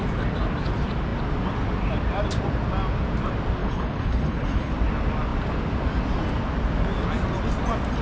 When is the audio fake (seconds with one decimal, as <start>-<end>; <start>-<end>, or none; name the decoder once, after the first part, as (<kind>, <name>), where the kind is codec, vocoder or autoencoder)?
3.6-4.7 (codec, HILCodec)